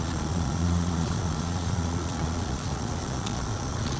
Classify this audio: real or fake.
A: fake